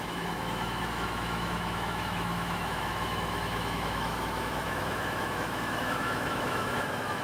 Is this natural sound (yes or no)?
no